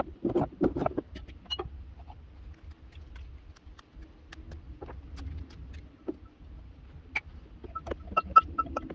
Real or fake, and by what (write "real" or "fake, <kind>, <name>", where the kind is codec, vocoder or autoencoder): real